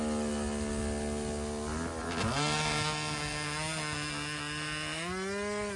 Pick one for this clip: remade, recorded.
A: recorded